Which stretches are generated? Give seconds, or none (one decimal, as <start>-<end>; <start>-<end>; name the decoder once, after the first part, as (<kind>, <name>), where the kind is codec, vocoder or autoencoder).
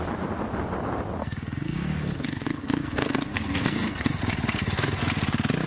1.2-4.2 (codec, SNAC)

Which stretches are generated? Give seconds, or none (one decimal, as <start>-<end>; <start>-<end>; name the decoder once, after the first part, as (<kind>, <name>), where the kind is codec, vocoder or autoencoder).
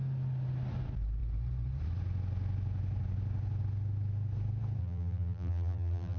4.8-6.2 (vocoder, BigVGAN v2)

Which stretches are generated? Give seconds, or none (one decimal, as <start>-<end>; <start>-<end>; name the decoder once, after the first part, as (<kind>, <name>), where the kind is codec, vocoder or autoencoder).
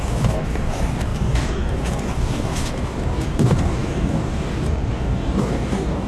0.0-6.1 (codec, DAC)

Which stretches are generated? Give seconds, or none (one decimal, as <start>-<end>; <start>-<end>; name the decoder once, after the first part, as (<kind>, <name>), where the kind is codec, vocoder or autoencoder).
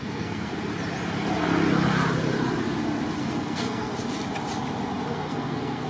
0.0-0.5 (codec, SNAC); 3.2-3.9; 5.1-5.9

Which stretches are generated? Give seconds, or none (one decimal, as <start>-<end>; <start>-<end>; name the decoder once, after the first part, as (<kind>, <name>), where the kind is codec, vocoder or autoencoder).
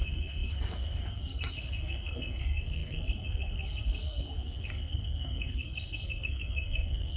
0.0-7.2 (codec, SNAC)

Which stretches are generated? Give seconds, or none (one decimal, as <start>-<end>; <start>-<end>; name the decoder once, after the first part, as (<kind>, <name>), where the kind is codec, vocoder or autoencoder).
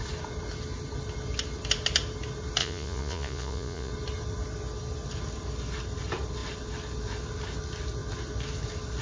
2.6-3.9 (vocoder, Vocos)